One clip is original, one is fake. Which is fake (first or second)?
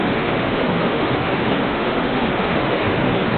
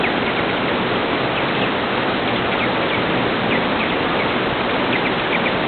first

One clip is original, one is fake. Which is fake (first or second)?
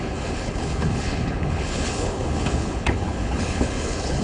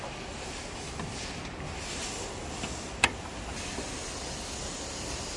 first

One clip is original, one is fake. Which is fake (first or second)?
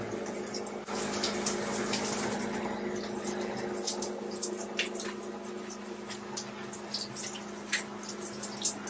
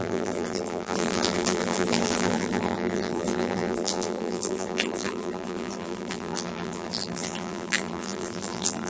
second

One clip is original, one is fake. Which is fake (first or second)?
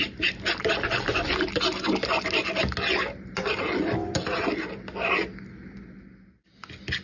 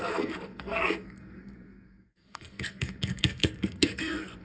second